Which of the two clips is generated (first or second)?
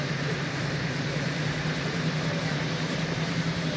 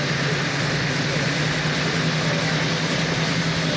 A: first